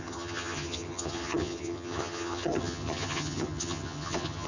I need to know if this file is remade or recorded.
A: remade